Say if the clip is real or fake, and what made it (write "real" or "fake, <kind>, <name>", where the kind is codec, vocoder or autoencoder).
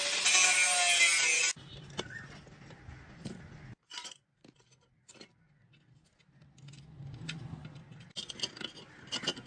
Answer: real